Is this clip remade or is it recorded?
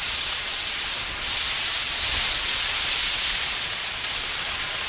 remade